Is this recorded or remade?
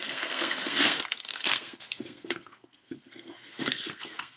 remade